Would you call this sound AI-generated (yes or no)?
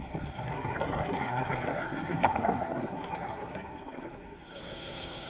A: yes